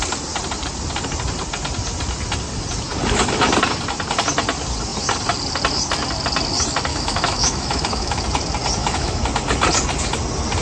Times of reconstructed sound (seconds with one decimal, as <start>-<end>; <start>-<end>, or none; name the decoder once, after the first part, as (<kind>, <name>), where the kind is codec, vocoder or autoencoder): 6.9-8.2 (autoencoder, DAC-VAE); 8.8-9.3